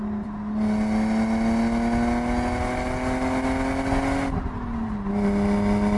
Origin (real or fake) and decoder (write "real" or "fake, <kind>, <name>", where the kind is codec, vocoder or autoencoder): real